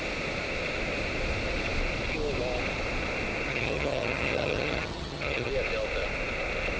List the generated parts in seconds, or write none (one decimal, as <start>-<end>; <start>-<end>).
3.5-5.5